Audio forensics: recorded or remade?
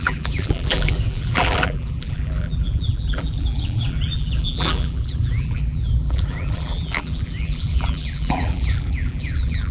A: remade